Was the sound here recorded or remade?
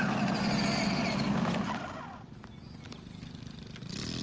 recorded